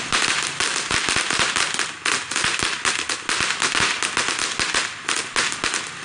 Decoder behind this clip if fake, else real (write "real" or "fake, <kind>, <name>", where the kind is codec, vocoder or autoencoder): real